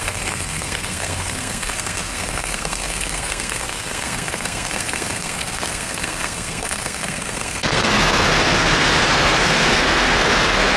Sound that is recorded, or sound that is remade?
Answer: remade